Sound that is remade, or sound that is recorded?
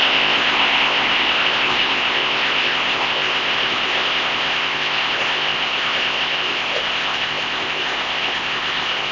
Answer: remade